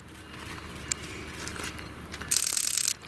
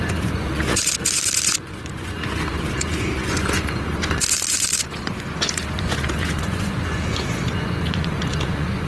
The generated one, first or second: second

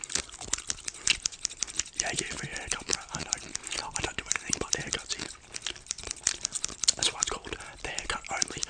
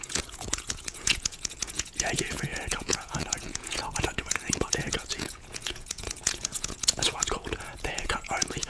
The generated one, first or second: second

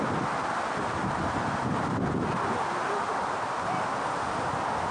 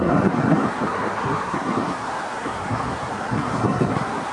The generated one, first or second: second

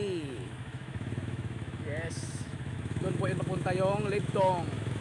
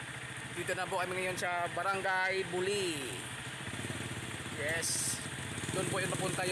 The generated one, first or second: first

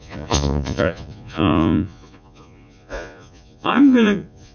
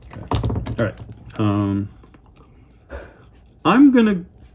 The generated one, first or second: first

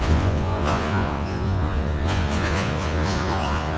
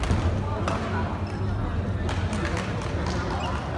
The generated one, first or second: first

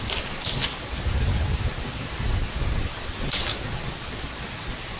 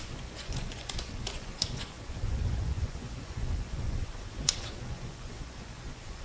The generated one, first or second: second